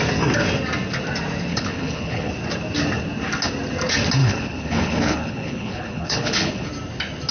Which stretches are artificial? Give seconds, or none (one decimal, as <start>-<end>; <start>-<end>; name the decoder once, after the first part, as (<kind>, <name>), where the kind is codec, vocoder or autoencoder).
1.5-2.3 (codec, HILCodec); 4.2-6.7